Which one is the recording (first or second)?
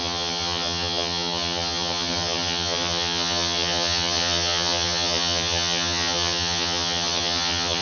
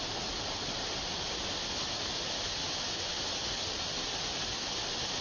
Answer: second